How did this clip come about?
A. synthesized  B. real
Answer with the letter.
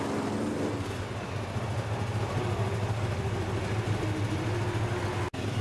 B